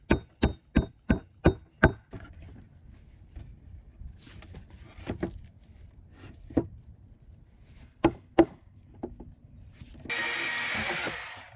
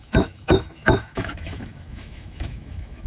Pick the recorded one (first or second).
first